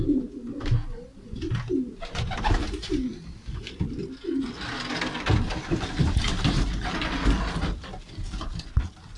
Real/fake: real